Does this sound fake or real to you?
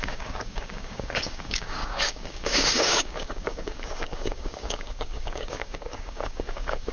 fake